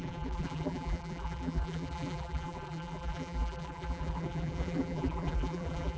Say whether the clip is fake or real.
fake